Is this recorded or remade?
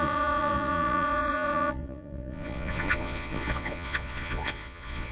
remade